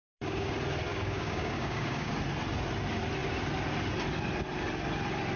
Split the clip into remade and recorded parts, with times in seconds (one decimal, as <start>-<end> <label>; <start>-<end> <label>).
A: 0.0-0.5 remade; 0.5-0.9 recorded; 0.9-2.1 remade; 2.1-5.4 recorded